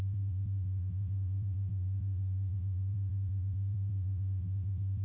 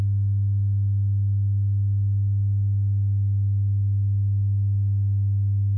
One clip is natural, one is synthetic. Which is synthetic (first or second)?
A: first